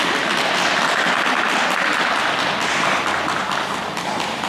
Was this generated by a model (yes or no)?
no